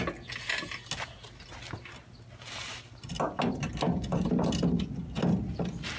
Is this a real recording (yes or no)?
yes